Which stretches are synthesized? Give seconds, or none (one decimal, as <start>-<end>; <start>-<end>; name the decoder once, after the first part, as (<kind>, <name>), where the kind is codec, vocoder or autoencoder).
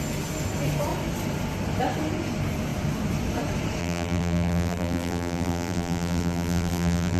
3.8-7.2 (vocoder, BigVGAN v2)